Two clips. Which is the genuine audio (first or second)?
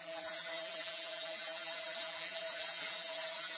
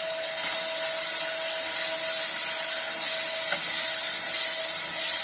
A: second